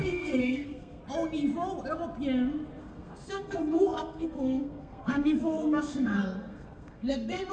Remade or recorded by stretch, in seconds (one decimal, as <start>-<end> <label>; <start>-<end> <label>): 0.0-1.0 remade; 1.0-2.8 recorded; 2.8-7.5 remade